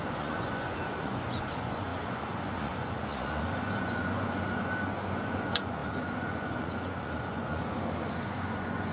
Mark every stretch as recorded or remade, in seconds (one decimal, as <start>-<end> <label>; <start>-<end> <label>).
0.0-8.9 remade